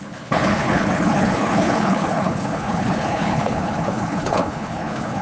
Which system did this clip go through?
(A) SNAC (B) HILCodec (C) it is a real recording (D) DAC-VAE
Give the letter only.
B